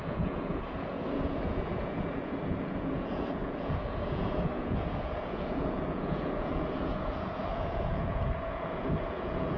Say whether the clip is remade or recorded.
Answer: remade